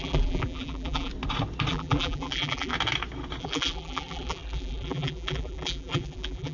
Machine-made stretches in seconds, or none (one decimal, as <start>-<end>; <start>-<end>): 0.0-1.1; 1.7-2.7; 3.4-6.5

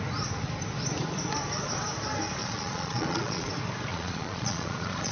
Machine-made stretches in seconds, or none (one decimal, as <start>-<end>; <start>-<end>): 2.4-3.5; 3.9-5.1

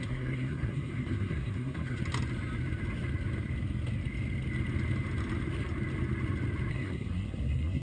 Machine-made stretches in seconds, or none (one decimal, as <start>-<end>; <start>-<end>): 0.0-2.0; 6.7-7.8